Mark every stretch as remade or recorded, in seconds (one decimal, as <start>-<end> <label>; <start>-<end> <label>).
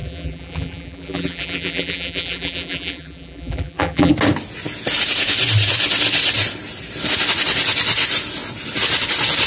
0.0-4.1 remade; 4.1-9.5 recorded